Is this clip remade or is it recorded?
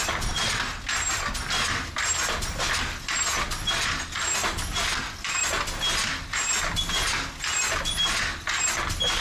recorded